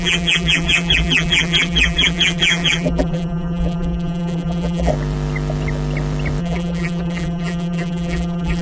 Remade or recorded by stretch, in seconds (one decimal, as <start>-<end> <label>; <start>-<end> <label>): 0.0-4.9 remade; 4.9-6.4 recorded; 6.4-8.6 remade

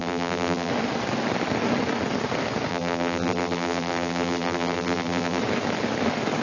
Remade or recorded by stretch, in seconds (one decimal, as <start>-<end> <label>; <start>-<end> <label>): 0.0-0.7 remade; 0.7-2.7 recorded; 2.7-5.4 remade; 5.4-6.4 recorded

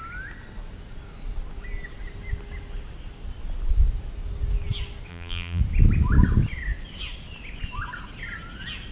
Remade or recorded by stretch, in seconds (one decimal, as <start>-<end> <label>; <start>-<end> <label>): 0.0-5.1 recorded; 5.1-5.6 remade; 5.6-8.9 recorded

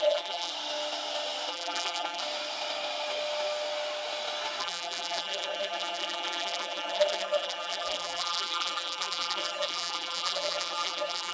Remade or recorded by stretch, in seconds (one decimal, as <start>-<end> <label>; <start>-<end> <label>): 0.0-0.5 remade; 0.5-1.5 recorded; 1.5-2.2 remade; 2.2-4.6 recorded; 4.6-11.3 remade

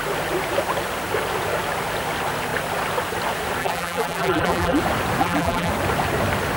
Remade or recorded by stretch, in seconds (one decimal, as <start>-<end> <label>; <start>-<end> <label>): 0.0-3.6 recorded; 3.6-4.8 remade; 4.8-5.2 recorded; 5.2-5.7 remade; 5.7-6.6 recorded

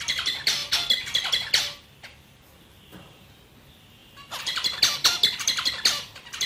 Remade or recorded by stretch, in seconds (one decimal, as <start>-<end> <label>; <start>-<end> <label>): 0.0-0.6 remade; 0.6-3.0 recorded; 3.0-6.5 remade